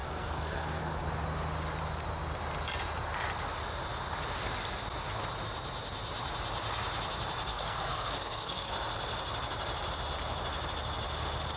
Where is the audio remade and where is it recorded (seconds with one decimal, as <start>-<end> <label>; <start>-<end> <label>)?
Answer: 0.0-1.0 remade; 1.0-7.5 recorded; 7.5-8.7 remade; 8.7-11.6 recorded

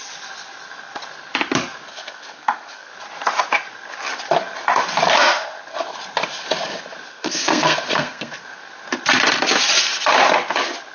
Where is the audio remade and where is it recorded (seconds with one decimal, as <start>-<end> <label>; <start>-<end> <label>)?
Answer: 0.0-1.9 recorded; 1.9-2.9 remade; 2.9-7.1 recorded; 7.1-8.6 remade; 8.6-10.9 recorded

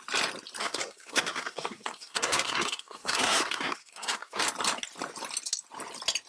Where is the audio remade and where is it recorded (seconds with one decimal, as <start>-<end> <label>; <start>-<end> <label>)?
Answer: 0.0-0.6 recorded; 0.6-4.4 remade; 4.4-6.3 recorded

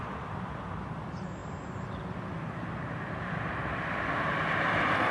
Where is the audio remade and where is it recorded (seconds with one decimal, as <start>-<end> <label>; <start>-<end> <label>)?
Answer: 0.0-5.1 recorded